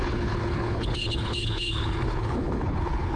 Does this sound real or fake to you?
fake